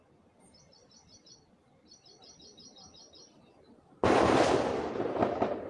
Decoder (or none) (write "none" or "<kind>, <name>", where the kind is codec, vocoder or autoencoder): none